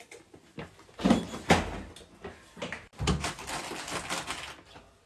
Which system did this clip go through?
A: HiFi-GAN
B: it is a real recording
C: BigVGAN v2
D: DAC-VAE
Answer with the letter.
B